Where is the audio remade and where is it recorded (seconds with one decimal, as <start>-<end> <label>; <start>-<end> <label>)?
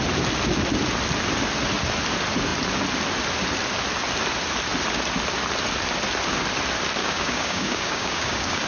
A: 0.0-7.0 recorded; 7.0-8.7 remade